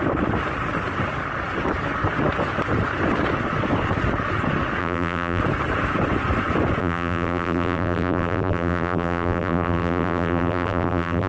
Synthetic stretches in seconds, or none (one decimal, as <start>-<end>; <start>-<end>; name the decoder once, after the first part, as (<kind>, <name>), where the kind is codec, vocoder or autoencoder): 4.8-5.4 (vocoder, BigVGAN v2); 6.8-11.3